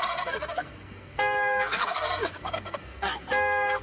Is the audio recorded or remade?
remade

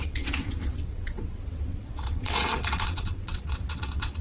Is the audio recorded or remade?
remade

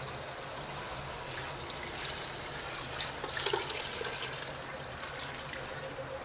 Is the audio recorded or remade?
recorded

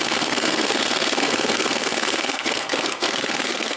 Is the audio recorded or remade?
remade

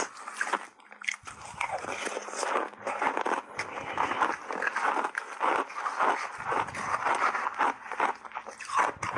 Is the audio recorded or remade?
remade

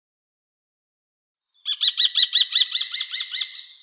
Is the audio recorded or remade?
remade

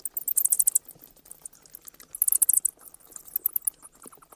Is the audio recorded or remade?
recorded